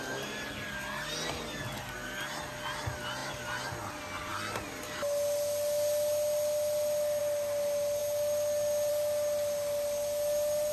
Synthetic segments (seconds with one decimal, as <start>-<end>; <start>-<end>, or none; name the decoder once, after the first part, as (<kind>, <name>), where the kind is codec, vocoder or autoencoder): none